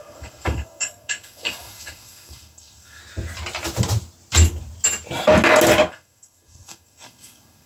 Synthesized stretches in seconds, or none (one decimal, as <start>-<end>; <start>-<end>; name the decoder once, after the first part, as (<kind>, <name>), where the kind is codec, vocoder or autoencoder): 0.0-3.0 (codec, SNAC); 5.9-7.7